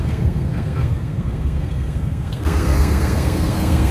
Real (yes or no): no